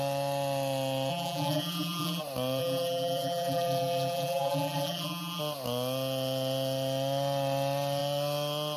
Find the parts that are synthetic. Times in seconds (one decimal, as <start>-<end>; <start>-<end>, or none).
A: 1.1-2.2; 2.6-5.4